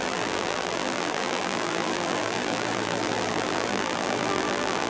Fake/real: fake